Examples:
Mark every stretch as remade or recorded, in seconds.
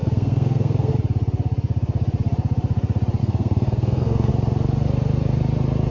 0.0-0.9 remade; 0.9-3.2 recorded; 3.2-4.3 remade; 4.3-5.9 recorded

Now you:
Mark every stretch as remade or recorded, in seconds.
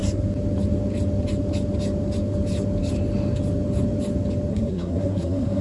0.0-4.5 recorded; 4.5-5.6 remade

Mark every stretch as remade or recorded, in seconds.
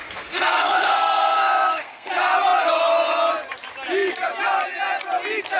0.0-2.1 remade; 2.1-5.6 recorded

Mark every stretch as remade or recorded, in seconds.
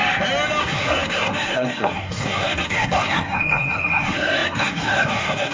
0.0-0.6 recorded; 0.6-5.5 remade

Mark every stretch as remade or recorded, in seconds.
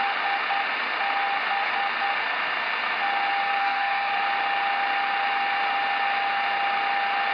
0.0-3.6 recorded; 3.6-4.1 remade; 4.1-7.3 recorded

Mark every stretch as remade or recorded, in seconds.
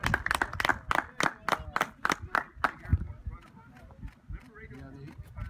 0.0-5.5 recorded